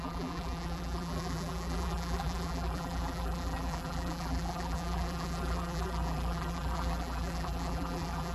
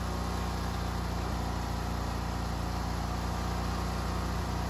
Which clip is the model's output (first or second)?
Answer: first